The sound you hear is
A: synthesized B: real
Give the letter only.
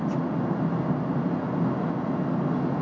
B